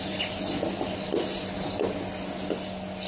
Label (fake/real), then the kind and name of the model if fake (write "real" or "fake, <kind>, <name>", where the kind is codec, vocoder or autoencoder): real